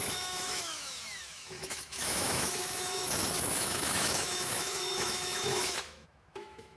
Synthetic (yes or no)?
yes